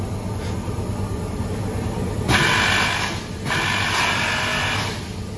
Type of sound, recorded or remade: recorded